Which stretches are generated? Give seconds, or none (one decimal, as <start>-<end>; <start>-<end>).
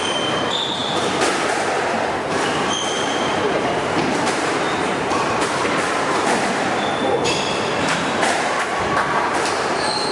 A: 0.0-10.1